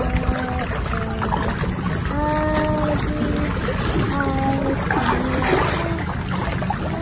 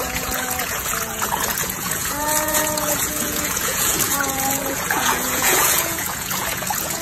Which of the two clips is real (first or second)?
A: first